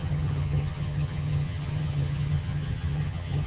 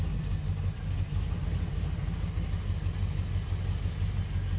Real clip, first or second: second